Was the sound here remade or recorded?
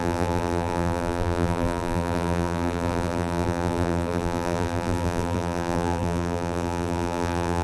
remade